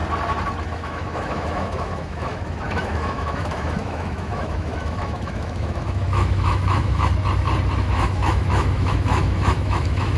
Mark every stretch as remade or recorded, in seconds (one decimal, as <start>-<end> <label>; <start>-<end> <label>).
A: 0.0-0.6 recorded; 0.6-7.1 remade; 7.1-7.8 recorded; 7.8-10.2 remade